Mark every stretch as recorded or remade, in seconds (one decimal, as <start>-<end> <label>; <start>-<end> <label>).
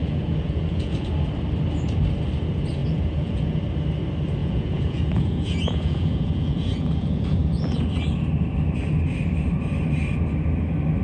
0.0-1.1 remade; 1.1-2.8 recorded; 2.8-3.6 remade; 3.6-4.4 recorded; 4.4-7.9 remade; 7.9-11.0 recorded